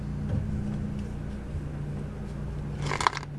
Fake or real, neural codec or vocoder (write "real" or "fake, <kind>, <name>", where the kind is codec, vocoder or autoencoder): real